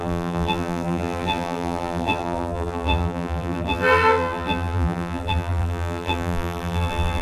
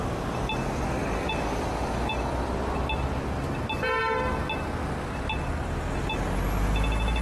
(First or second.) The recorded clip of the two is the second